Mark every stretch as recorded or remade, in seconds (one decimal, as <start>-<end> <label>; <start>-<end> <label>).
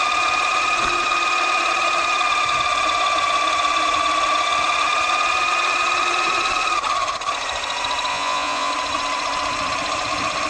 0.0-8.1 recorded; 8.1-8.7 remade; 8.7-10.5 recorded